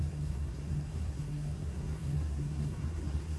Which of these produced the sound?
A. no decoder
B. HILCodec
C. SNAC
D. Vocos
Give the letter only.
C